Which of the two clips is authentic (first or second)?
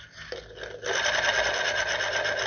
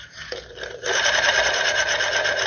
first